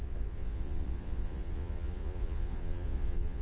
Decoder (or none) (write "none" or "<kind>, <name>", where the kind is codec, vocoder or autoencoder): vocoder, Vocos